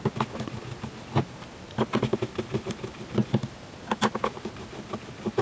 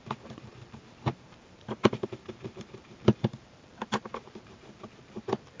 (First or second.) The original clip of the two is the first